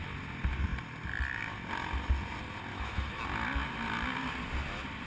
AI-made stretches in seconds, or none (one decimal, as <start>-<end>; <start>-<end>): 2.7-3.2